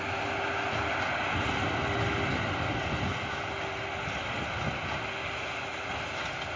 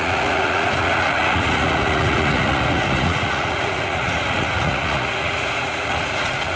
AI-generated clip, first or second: second